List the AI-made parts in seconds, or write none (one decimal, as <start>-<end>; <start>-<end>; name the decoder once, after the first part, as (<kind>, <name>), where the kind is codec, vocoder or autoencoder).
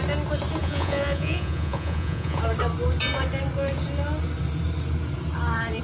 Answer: 0.6-2.4 (vocoder, Vocos)